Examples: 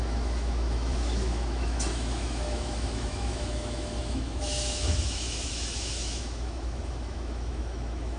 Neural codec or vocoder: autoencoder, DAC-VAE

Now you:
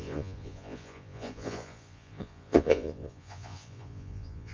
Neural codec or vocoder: vocoder, Vocos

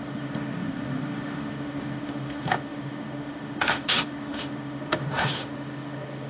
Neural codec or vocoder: autoencoder, DAC-VAE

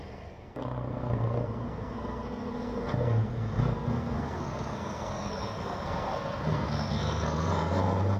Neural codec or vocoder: codec, SNAC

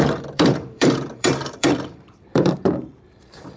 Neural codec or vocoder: vocoder, BigVGAN v2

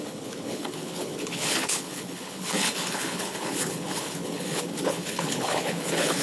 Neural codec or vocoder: codec, HILCodec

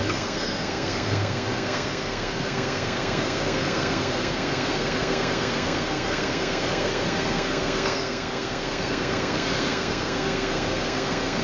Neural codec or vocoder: codec, SNAC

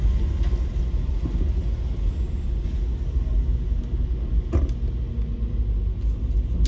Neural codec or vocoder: none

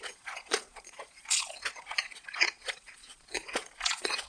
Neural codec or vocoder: vocoder, Vocos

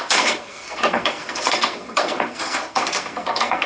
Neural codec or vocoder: codec, SNAC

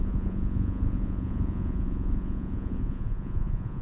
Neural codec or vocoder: vocoder, Vocos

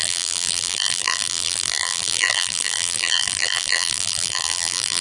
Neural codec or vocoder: vocoder, BigVGAN v2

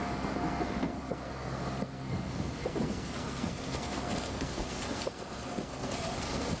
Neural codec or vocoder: codec, SNAC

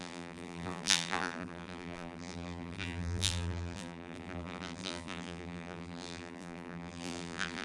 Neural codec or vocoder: vocoder, BigVGAN v2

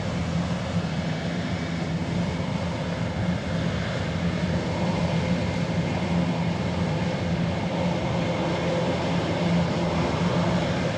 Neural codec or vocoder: none